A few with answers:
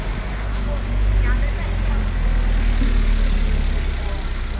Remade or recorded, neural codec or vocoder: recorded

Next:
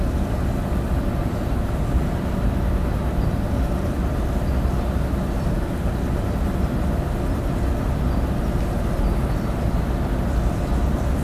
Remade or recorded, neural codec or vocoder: recorded